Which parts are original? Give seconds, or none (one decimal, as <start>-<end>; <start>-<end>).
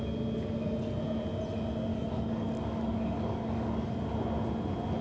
0.0-1.9; 3.9-5.0